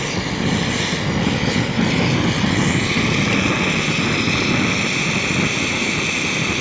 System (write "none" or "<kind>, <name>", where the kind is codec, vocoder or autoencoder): none